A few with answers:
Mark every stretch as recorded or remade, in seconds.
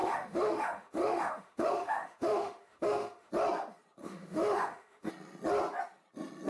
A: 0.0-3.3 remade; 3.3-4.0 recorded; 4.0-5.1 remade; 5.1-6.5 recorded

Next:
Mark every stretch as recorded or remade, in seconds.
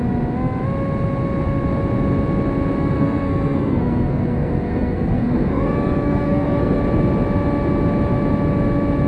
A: 0.0-2.8 recorded; 2.8-6.8 remade; 6.8-9.1 recorded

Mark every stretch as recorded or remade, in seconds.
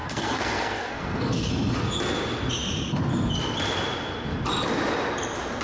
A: 0.0-1.5 remade; 1.5-5.6 recorded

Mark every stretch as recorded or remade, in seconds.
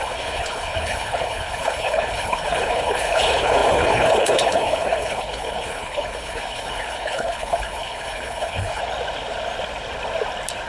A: 0.0-8.8 remade; 8.8-10.7 recorded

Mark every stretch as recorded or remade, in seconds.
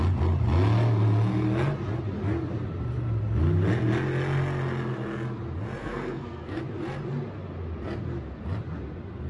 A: 0.0-5.8 recorded; 5.8-6.6 remade; 6.6-9.3 recorded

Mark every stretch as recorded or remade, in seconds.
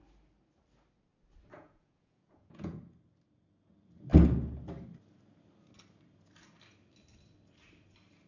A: 0.0-1.5 recorded; 1.5-2.8 remade; 2.8-8.3 recorded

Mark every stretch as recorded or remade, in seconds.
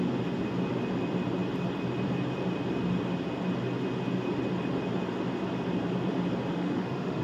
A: 0.0-6.5 recorded; 6.5-7.2 remade